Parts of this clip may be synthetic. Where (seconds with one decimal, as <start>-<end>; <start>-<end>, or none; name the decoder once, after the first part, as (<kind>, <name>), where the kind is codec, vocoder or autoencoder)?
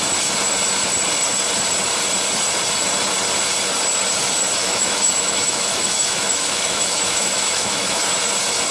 4.6-8.0 (autoencoder, DAC-VAE)